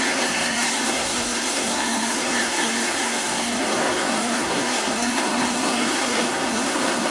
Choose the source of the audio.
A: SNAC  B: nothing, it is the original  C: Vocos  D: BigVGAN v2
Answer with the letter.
A